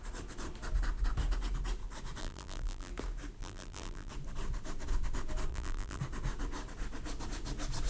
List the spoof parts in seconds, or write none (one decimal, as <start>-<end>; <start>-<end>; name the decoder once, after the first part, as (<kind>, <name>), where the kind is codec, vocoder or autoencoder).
2.2-2.9 (vocoder, BigVGAN v2); 3.4-4.1; 5.5-6.0